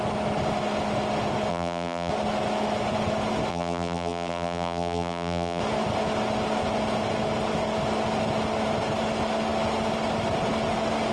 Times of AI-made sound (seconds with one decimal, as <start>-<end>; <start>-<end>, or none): 1.5-2.1; 3.5-5.6